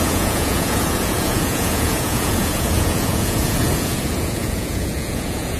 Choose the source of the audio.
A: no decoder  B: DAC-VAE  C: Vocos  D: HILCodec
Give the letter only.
C